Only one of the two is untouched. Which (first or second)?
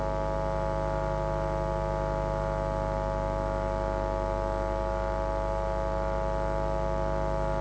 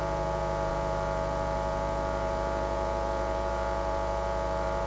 first